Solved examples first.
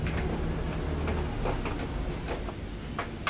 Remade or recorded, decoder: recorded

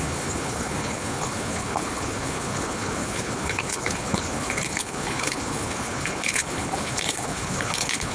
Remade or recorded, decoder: remade, codec, HILCodec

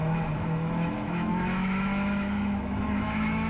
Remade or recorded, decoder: remade, autoencoder, DAC-VAE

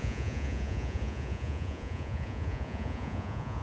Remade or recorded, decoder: remade, vocoder, Vocos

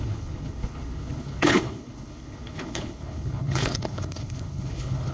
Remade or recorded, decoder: remade, codec, HILCodec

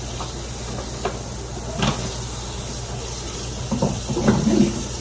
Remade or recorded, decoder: recorded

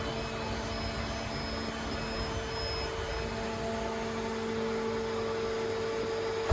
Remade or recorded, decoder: recorded